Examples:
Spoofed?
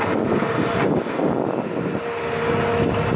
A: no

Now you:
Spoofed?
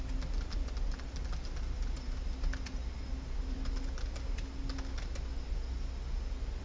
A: no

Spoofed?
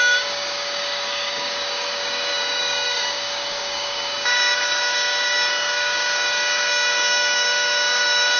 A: yes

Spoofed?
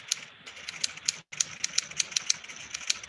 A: no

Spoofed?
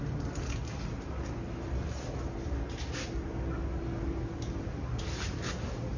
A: no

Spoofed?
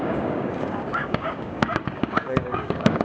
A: yes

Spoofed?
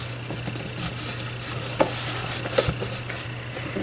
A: no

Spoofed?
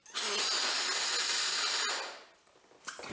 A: no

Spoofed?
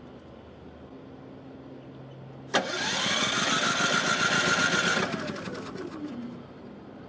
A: no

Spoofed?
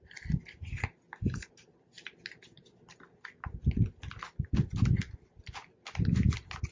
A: no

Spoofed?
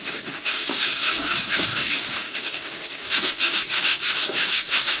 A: yes